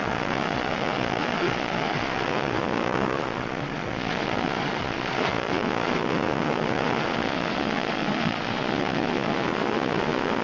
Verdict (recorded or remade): remade